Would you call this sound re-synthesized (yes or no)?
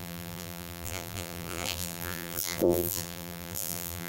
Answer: yes